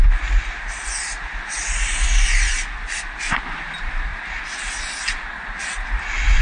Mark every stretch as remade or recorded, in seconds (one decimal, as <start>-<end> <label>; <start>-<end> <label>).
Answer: 0.0-6.4 recorded